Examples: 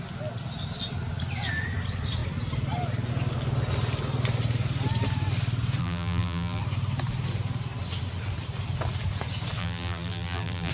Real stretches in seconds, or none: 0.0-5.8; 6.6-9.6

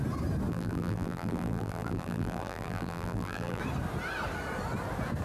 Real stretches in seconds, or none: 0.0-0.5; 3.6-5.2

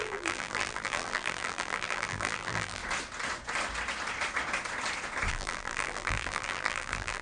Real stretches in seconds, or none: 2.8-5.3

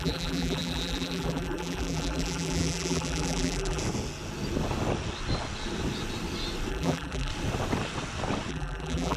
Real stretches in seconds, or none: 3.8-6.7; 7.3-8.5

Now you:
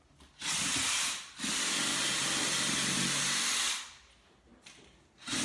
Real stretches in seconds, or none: 0.0-0.8; 3.0-5.4